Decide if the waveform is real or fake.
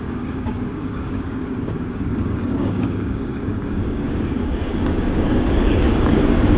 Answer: fake